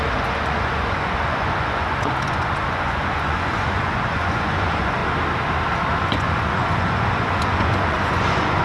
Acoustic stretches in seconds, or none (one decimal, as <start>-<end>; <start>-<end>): 5.0-6.0